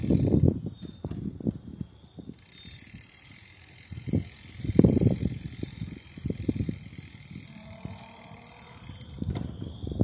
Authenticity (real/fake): real